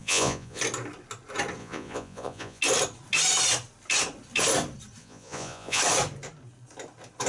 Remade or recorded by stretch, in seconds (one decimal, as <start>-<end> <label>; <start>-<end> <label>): 0.0-0.6 remade; 0.6-1.6 recorded; 1.6-2.6 remade; 2.6-5.0 recorded; 5.0-5.8 remade; 5.8-7.3 recorded

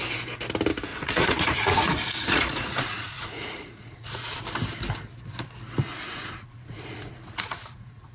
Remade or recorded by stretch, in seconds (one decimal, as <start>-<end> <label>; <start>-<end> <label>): 0.0-0.9 recorded; 0.9-4.4 remade; 4.4-5.9 recorded; 5.9-8.1 remade

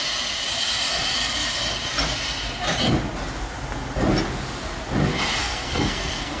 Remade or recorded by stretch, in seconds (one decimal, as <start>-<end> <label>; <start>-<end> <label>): 0.0-5.4 recorded; 5.4-6.4 remade

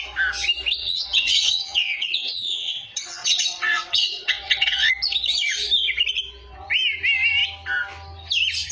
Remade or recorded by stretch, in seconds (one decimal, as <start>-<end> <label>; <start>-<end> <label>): 0.0-0.8 recorded; 0.8-4.9 remade; 4.9-8.7 recorded

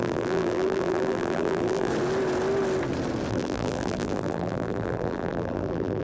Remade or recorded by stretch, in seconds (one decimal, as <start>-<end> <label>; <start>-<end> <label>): 0.0-1.9 remade; 1.9-3.3 recorded; 3.3-6.0 remade

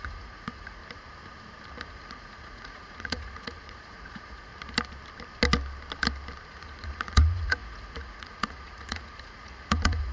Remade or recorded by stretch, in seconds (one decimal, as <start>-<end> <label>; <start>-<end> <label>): 0.0-0.8 remade; 0.8-1.9 recorded; 1.9-4.5 remade; 4.5-6.5 recorded; 6.5-10.1 remade

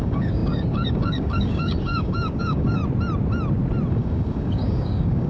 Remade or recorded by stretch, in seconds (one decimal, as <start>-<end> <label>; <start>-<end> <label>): 0.0-2.8 remade; 2.8-3.9 recorded; 3.9-5.3 remade